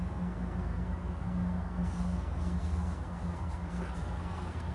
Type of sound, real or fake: fake